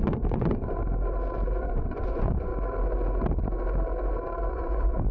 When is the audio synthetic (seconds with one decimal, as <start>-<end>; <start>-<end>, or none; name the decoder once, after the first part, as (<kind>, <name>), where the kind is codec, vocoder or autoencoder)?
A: 0.0-0.8 (vocoder, Vocos); 1.6-2.5; 4.5-5.1

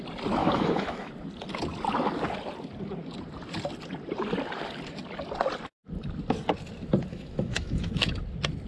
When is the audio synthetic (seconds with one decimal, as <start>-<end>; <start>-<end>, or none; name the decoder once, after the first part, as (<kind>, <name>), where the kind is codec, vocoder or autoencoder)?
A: 0.4-1.1 (autoencoder, DAC-VAE); 7.1-7.9

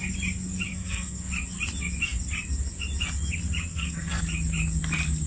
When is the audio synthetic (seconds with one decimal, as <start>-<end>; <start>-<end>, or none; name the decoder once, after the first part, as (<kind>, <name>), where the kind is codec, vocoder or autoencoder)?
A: 0.7-1.2 (codec, SNAC); 3.7-4.2

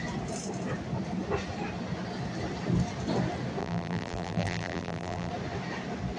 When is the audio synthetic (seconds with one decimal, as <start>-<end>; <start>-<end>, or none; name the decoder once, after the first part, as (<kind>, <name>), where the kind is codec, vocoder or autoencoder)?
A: 3.6-5.3 (vocoder, BigVGAN v2)

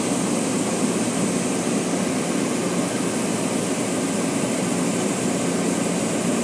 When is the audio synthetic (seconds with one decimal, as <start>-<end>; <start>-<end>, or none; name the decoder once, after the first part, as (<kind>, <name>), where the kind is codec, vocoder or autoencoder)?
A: none

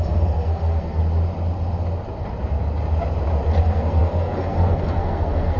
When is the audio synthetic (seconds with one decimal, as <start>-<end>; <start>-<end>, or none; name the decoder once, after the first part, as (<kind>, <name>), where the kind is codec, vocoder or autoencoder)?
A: 0.0-1.0 (codec, SNAC); 3.6-5.6